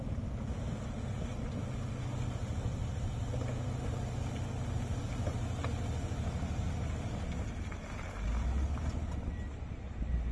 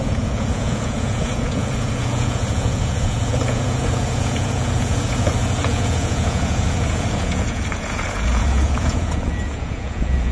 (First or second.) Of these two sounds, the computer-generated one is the second